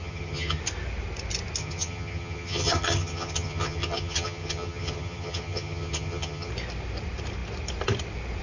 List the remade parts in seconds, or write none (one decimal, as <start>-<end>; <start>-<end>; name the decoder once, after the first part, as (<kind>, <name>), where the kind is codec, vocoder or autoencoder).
0.0-0.6 (vocoder, HiFi-GAN); 1.6-6.5